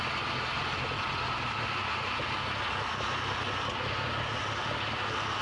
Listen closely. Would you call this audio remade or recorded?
recorded